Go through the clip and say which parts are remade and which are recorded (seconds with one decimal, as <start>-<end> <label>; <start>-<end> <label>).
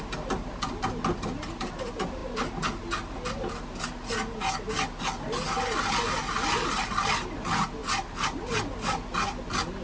0.0-9.8 recorded